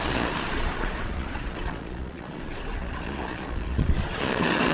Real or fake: fake